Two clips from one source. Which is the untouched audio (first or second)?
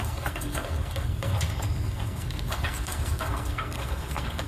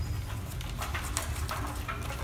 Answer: second